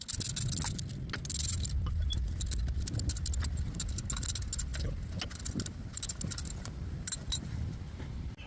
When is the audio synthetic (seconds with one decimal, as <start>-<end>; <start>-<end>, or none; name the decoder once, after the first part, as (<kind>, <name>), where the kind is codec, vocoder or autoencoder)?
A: none